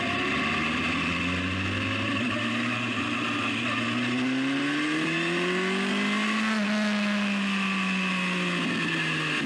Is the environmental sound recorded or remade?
recorded